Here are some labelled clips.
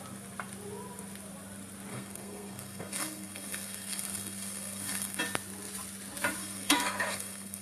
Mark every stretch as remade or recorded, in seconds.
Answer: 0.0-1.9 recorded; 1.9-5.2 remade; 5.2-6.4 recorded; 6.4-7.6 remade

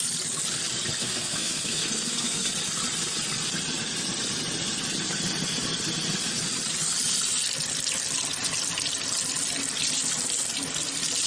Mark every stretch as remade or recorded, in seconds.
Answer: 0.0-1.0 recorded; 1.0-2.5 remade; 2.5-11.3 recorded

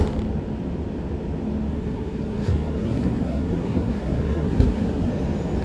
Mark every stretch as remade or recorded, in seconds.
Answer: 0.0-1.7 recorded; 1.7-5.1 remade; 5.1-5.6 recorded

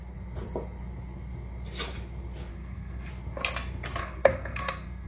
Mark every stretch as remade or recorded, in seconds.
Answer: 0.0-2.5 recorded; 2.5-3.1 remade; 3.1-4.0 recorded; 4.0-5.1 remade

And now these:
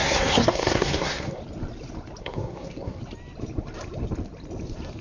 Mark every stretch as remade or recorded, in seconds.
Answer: 0.0-1.4 remade; 1.4-2.2 recorded; 2.2-3.0 remade; 3.0-5.0 recorded

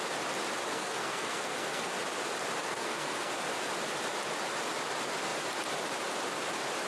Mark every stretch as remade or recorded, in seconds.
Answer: 0.0-0.7 recorded; 0.7-2.0 remade; 2.0-2.6 recorded; 2.6-3.3 remade; 3.3-6.9 recorded

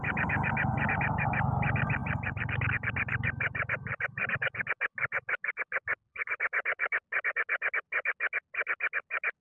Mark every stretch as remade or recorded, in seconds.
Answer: 0.0-9.4 recorded